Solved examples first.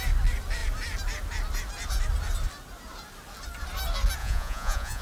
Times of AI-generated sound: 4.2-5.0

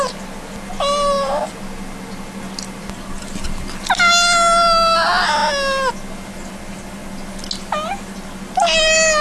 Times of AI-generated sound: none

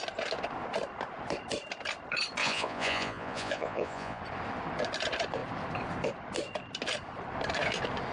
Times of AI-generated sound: 2.4-4.2